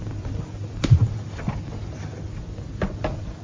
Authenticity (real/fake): real